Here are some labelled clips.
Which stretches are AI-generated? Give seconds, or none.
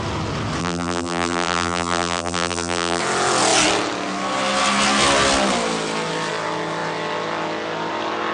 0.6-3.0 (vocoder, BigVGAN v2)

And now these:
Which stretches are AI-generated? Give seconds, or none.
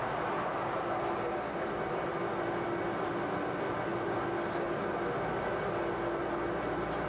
none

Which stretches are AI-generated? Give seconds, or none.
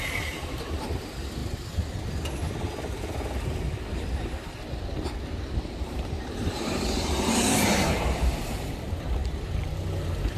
0.0-1.4 (vocoder, BigVGAN v2); 5.8-9.2; 10.0-10.4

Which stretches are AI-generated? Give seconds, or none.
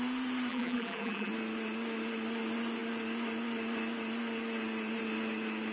0.5-1.3 (vocoder, BigVGAN v2)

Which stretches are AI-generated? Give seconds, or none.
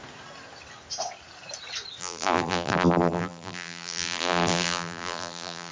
2.0-5.7 (vocoder, BigVGAN v2)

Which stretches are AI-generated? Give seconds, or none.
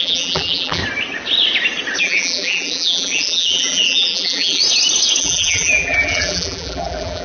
0.0-0.8 (vocoder, BigVGAN v2); 2.0-4.6; 5.2-7.2